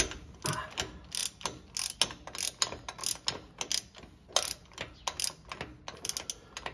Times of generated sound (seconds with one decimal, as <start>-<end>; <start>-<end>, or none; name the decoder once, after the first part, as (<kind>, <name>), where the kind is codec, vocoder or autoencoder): none